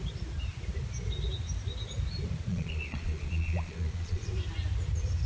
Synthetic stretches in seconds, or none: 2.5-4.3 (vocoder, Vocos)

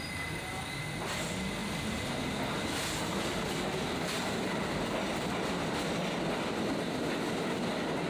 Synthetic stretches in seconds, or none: none

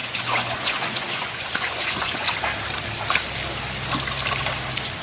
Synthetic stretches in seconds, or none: 0.0-2.3 (vocoder, Vocos)

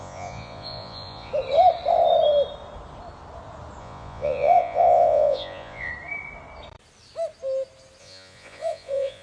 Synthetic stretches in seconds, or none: 0.0-1.3 (vocoder, Vocos); 3.8-5.9; 8.0-9.2

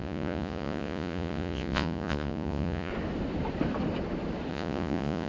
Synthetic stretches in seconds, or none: 0.0-2.9 (vocoder, Vocos); 4.5-5.3

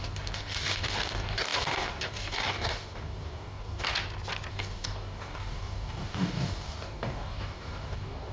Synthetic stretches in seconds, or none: 0.0-3.9 (codec, DAC); 4.5-8.3

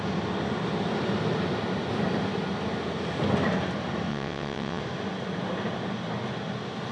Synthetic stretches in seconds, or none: 4.1-4.8 (vocoder, WaveNeXt)